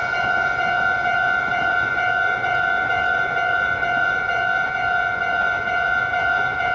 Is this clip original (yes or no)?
no